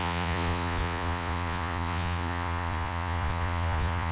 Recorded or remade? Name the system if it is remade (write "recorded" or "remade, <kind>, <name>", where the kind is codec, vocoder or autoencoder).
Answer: remade, vocoder, Vocos